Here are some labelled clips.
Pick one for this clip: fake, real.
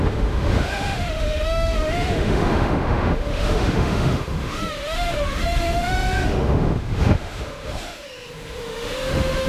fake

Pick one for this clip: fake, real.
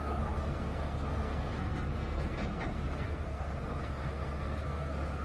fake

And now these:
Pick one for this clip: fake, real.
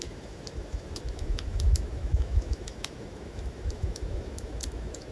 fake